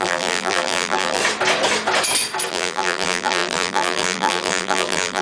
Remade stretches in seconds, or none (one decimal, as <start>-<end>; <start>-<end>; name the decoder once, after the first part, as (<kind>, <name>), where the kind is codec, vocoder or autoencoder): 0.0-1.2 (vocoder, BigVGAN v2); 2.5-5.2